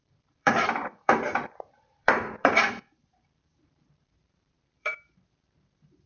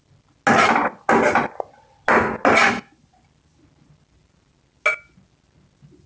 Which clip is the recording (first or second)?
second